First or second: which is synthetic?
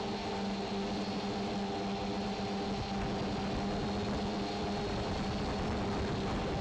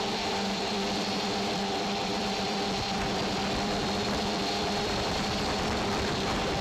second